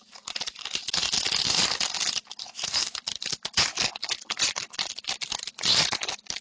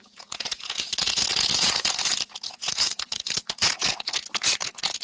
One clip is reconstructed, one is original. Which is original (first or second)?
first